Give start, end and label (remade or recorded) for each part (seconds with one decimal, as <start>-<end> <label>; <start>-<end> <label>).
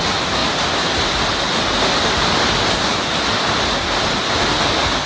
0.0-5.1 recorded